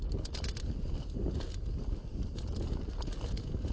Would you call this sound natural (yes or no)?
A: yes